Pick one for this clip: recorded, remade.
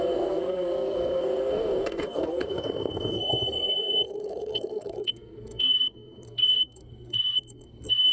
remade